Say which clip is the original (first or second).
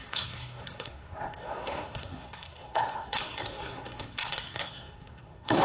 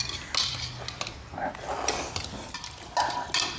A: second